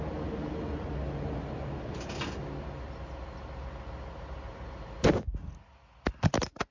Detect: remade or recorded recorded